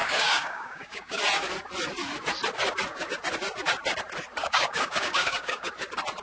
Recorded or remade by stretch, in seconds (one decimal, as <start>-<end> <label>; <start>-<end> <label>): 0.0-1.2 remade; 1.2-4.4 recorded; 4.4-5.7 remade; 5.7-6.2 recorded